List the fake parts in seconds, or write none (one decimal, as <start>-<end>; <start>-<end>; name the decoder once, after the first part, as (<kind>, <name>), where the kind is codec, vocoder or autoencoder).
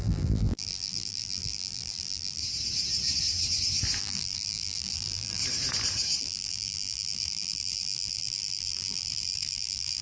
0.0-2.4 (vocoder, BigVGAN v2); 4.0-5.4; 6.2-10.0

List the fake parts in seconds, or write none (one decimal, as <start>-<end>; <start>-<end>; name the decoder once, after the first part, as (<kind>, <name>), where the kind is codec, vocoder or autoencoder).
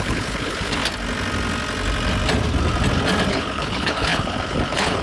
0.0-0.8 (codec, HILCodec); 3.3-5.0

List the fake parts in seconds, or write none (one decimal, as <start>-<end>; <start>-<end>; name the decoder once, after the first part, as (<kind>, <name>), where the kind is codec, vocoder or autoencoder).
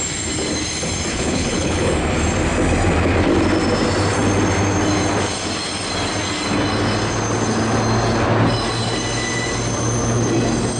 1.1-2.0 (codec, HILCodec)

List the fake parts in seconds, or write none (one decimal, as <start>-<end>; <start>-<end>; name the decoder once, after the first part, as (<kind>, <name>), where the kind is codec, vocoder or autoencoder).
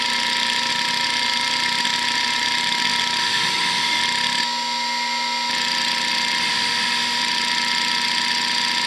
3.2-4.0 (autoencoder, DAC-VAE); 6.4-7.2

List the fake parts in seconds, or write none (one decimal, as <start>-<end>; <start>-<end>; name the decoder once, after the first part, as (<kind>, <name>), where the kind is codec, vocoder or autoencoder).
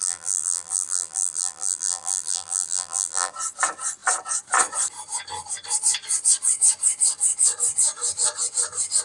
0.0-3.3 (vocoder, BigVGAN v2)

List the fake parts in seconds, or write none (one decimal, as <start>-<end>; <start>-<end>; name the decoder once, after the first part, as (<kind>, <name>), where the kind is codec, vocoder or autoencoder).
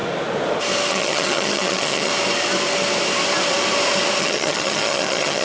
0.9-2.1 (vocoder, HiFi-GAN); 4.2-5.4